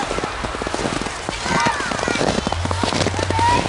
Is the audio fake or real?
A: real